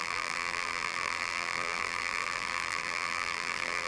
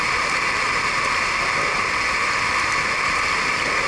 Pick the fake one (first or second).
first